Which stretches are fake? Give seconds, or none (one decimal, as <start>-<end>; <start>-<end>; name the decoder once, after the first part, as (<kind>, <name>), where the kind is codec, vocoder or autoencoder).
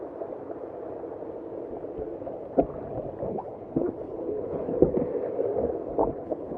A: 3.3-4.7 (codec, HILCodec); 6.0-6.6